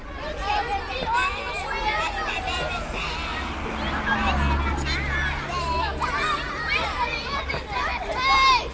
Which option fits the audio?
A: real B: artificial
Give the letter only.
A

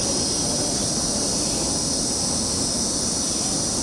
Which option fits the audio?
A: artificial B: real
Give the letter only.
B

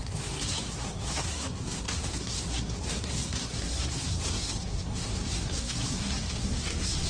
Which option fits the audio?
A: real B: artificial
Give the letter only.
B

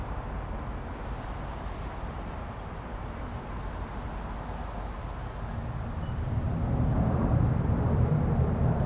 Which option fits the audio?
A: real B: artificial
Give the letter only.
A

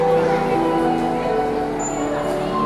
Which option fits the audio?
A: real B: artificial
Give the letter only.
A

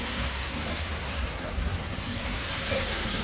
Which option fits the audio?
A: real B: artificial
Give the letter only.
B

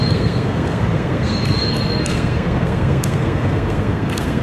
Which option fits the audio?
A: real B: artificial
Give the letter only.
B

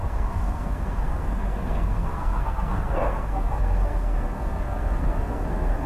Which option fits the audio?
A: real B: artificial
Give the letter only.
B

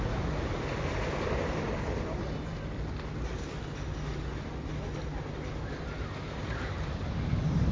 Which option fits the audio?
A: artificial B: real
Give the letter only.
B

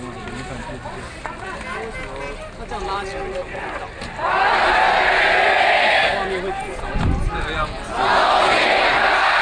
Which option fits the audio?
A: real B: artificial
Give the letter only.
A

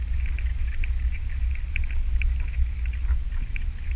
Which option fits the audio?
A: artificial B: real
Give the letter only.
B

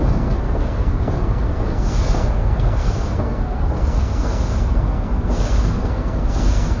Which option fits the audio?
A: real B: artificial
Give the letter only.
B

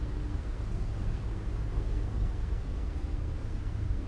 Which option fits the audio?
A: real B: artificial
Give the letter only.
B